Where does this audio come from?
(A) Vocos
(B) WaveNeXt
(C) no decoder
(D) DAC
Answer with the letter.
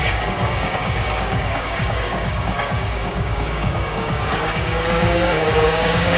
D